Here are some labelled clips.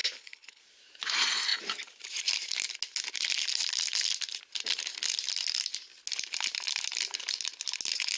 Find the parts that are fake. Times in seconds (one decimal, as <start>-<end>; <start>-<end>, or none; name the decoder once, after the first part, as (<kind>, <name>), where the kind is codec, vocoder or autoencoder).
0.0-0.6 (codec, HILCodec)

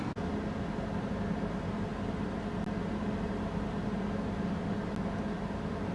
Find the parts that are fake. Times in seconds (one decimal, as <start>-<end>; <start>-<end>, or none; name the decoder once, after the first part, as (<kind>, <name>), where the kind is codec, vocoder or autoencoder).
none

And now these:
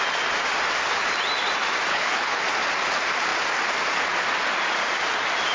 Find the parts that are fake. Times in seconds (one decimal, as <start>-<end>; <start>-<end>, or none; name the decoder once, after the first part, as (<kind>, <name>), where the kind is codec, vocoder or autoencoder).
1.9-2.4 (codec, HILCodec)

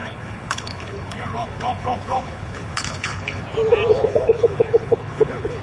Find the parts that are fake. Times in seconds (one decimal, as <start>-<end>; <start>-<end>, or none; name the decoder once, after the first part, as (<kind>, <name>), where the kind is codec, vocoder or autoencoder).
0.0-3.4 (codec, HILCodec); 3.9-5.6